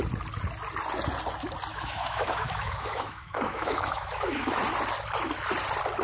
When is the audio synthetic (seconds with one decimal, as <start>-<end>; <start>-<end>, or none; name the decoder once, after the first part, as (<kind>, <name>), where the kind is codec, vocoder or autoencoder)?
1.7-4.5 (autoencoder, DAC-VAE)